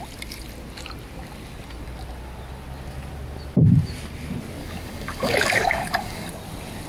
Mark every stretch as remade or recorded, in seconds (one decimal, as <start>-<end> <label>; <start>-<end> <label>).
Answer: 0.0-4.6 recorded; 4.6-6.3 remade; 6.3-6.9 recorded